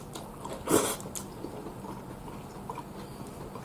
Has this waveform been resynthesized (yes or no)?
no